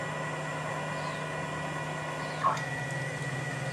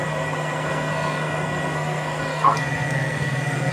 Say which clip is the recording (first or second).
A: first